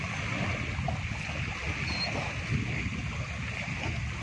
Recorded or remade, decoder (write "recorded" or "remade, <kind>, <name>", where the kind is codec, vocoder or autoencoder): recorded